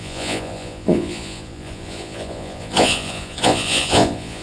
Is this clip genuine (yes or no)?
no